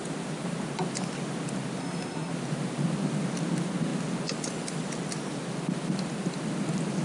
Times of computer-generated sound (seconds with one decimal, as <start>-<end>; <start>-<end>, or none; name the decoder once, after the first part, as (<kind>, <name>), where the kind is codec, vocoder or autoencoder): 1.8-2.3 (codec, SNAC)